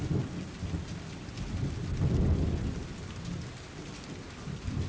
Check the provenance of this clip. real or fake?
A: real